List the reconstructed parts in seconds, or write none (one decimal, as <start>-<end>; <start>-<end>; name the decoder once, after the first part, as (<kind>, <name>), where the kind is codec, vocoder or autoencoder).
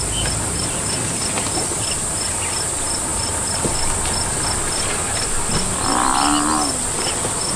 none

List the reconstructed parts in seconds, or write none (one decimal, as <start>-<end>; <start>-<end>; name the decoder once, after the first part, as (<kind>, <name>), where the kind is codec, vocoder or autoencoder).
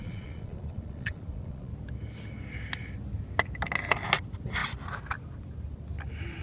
0.0-1.7 (vocoder, Vocos)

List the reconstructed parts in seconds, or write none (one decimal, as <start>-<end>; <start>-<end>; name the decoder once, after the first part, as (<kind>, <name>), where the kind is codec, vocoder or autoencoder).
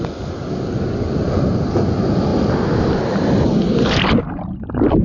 none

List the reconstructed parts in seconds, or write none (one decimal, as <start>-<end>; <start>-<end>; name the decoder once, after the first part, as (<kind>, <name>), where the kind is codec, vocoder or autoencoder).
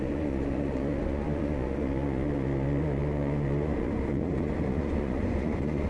0.0-5.9 (vocoder, Vocos)